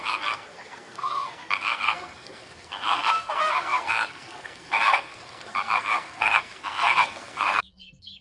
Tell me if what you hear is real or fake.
fake